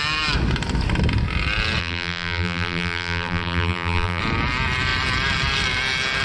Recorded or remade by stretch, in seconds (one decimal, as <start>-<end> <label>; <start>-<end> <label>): 0.0-1.8 recorded; 1.8-4.2 remade; 4.2-6.2 recorded